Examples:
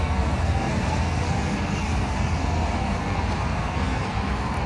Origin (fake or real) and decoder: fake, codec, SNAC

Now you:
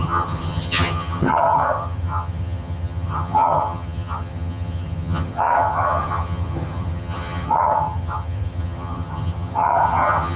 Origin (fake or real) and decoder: fake, vocoder, HiFi-GAN